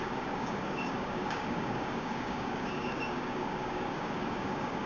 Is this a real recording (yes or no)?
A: no